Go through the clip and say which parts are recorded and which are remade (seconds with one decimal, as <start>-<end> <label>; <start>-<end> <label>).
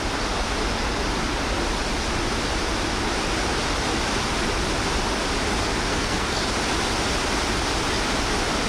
0.0-5.9 recorded; 5.9-6.4 remade; 6.4-8.7 recorded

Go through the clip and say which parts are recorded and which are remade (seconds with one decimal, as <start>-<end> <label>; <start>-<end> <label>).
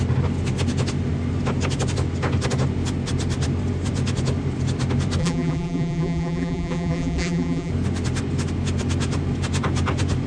0.0-5.2 recorded; 5.2-7.7 remade; 7.7-10.3 recorded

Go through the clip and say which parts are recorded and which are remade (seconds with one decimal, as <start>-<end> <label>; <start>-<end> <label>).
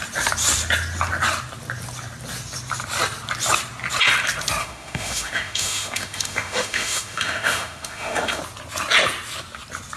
0.0-4.6 recorded; 4.6-8.4 remade; 8.4-10.0 recorded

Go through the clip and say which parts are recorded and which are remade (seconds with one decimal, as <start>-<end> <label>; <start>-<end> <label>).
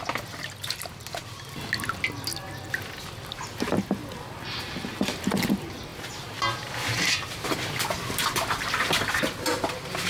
0.0-10.1 recorded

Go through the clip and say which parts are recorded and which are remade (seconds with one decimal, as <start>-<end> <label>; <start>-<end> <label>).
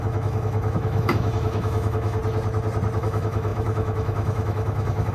0.0-2.2 remade; 2.2-3.0 recorded; 3.0-5.1 remade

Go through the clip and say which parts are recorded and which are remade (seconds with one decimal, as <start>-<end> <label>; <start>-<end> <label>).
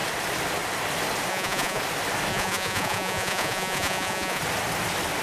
0.0-1.3 recorded; 1.3-1.8 remade; 1.8-2.3 recorded; 2.3-4.4 remade; 4.4-5.2 recorded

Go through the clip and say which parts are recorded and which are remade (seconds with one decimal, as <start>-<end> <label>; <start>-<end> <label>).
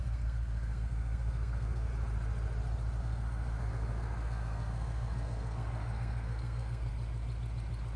0.0-1.9 remade; 1.9-3.0 recorded; 3.0-6.9 remade; 6.9-8.0 recorded